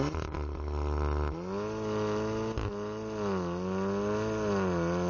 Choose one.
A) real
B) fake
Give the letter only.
A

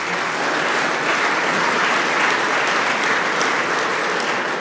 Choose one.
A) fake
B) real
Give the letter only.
B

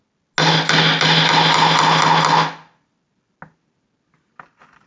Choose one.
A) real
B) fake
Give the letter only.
A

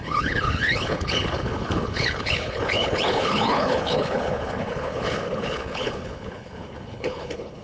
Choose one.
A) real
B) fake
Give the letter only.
B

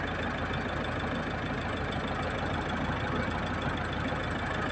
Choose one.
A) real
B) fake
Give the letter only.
A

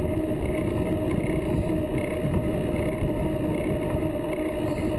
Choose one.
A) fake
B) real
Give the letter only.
B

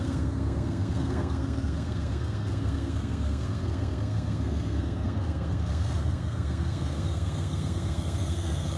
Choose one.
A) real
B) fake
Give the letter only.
B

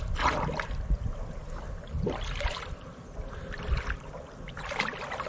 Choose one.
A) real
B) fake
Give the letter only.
A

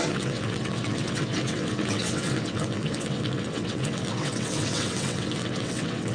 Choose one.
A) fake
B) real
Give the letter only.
A